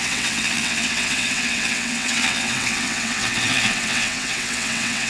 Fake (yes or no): yes